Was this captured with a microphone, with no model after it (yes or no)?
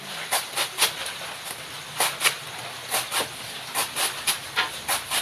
yes